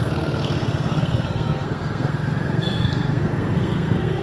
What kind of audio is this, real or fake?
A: fake